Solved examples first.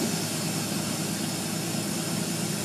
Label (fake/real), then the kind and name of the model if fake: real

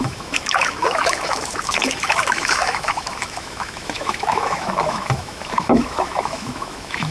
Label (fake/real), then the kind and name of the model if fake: fake, autoencoder, DAC-VAE